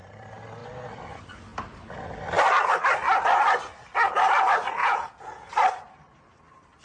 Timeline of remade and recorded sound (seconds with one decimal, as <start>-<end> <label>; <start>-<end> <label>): 0.0-4.8 recorded; 4.8-5.5 remade; 5.5-6.8 recorded